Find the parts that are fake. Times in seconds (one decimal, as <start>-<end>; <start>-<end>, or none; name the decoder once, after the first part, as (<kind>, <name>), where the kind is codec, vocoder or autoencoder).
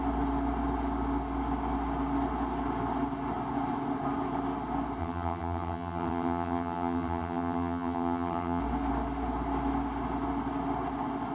5.0-8.6 (vocoder, HiFi-GAN)